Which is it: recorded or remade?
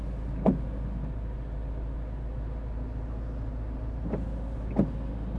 recorded